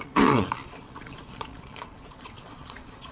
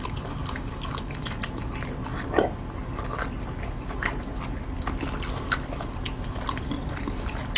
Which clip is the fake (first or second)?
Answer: first